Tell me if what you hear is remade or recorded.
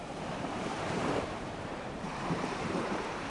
remade